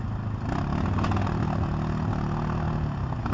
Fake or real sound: real